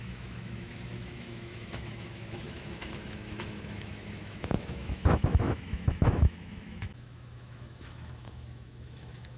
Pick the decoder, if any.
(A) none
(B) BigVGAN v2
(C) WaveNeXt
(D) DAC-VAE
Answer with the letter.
D